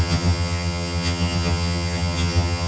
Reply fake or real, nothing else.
fake